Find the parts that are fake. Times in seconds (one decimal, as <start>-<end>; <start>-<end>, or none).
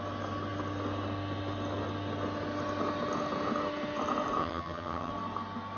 4.4-5.1